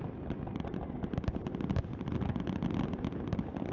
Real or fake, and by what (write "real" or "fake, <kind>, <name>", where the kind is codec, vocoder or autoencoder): real